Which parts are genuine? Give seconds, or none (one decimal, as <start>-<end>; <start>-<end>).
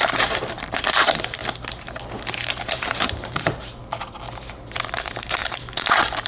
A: 1.4-2.5; 3.8-4.7